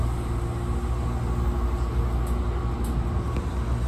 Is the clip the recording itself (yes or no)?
yes